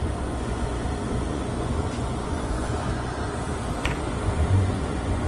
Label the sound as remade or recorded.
remade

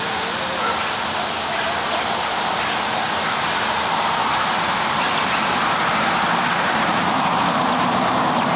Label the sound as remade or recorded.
recorded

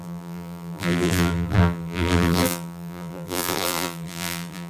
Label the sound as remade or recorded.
remade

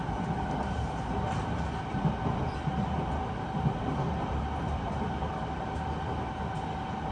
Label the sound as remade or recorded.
recorded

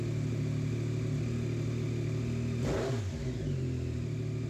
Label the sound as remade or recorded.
recorded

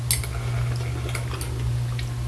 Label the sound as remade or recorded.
recorded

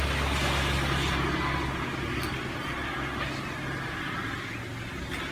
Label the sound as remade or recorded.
recorded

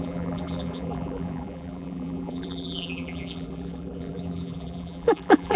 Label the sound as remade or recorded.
remade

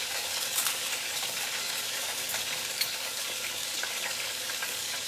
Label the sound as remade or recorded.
remade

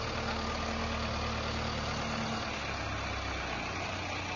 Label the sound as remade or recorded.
recorded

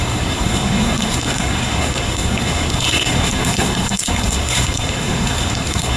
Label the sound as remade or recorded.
remade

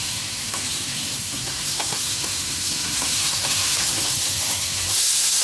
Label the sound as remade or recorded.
remade